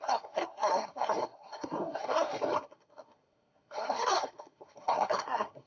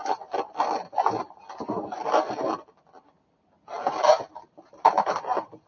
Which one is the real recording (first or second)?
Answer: second